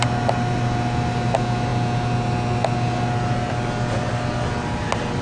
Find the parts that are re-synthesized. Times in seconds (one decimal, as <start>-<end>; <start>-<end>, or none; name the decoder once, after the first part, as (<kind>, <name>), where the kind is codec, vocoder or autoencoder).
none